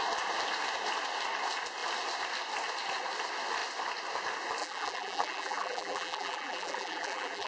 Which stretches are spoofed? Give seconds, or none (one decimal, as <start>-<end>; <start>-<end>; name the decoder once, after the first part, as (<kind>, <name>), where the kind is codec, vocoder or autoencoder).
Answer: 4.6-7.5 (vocoder, BigVGAN v2)